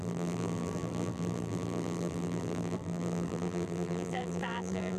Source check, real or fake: fake